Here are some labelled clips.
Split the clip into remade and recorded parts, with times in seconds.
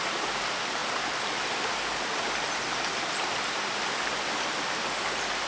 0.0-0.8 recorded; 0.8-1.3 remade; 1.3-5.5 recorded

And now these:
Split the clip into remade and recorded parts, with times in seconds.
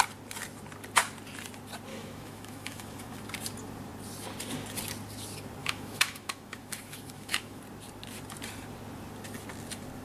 0.0-1.9 recorded; 1.9-3.1 remade; 3.1-5.6 recorded; 5.6-7.6 remade; 7.6-10.0 recorded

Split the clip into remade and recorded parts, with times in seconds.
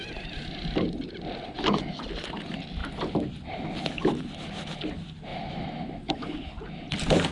0.0-5.3 recorded; 5.3-6.1 remade; 6.1-7.3 recorded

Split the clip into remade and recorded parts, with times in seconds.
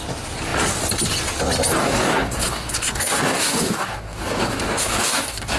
0.0-1.8 recorded; 1.8-5.6 remade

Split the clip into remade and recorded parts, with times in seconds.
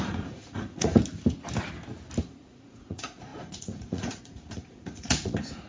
0.0-1.0 remade; 1.0-2.2 recorded; 2.2-5.7 remade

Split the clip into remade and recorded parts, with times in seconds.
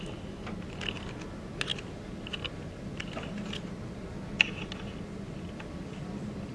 0.0-6.5 recorded